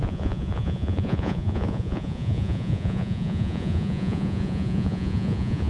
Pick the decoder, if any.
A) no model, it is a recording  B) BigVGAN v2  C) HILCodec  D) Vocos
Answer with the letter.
D